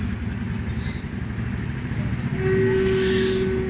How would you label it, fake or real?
real